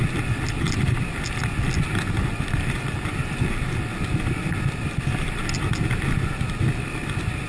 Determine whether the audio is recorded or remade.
recorded